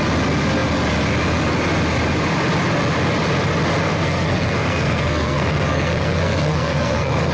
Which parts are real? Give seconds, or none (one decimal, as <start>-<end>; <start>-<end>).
0.0-3.8